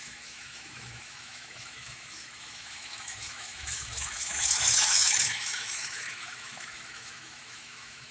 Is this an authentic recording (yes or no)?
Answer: no